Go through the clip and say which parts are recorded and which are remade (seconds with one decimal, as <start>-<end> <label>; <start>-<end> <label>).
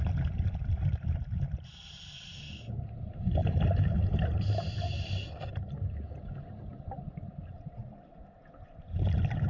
0.0-3.4 recorded; 3.4-3.9 remade; 3.9-6.7 recorded; 6.7-7.3 remade; 7.3-9.5 recorded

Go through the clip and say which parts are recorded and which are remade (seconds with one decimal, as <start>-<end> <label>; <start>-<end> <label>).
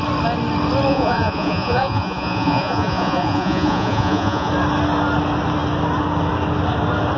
0.0-0.9 recorded; 0.9-4.5 remade; 4.5-7.2 recorded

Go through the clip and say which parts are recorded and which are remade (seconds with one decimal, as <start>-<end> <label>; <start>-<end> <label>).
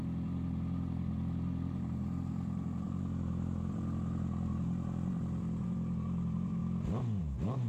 0.0-6.6 remade; 6.6-7.2 recorded; 7.2-7.7 remade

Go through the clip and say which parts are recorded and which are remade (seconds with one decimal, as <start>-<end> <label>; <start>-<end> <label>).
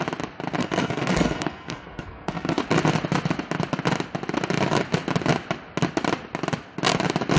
0.0-0.6 recorded; 0.6-2.6 remade; 2.6-7.4 recorded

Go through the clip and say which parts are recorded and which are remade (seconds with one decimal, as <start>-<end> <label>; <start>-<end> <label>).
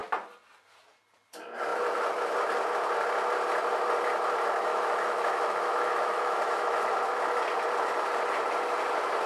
0.0-4.7 recorded; 4.7-6.9 remade; 6.9-9.3 recorded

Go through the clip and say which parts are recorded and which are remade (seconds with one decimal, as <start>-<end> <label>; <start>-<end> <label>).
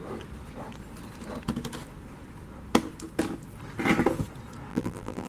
0.0-4.7 recorded; 4.7-5.3 remade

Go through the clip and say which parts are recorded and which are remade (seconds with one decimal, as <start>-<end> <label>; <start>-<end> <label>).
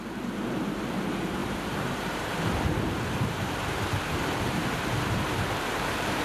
0.0-6.2 remade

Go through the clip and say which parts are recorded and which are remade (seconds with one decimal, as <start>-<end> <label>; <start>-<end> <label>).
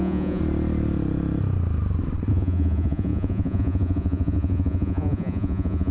0.0-0.4 remade; 0.4-2.3 recorded; 2.3-5.9 remade